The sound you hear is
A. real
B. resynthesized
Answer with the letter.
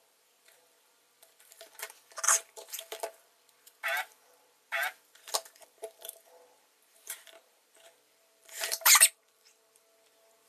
B